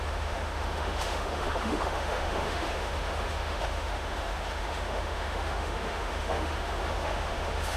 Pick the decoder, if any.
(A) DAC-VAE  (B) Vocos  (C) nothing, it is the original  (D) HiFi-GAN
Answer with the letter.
A